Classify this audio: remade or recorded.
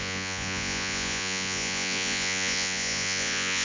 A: remade